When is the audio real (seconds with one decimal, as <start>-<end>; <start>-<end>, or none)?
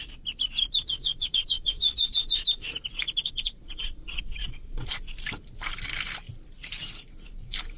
0.0-1.0; 2.2-3.2; 5.0-7.8